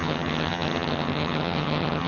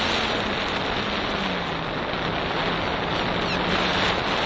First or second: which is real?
second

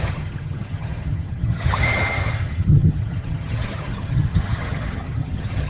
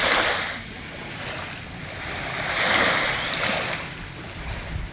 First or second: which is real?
second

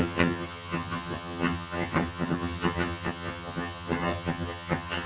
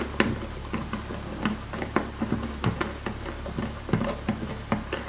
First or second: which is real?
second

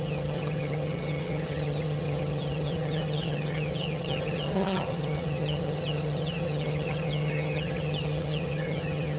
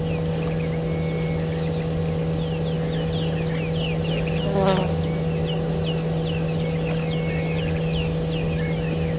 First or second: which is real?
second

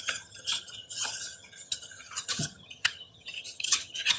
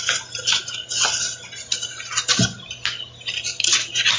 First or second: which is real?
second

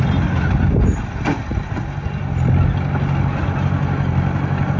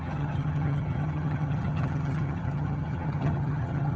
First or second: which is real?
first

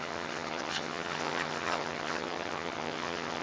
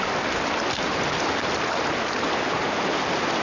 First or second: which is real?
second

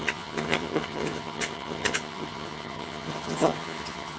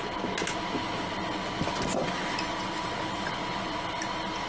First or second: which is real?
second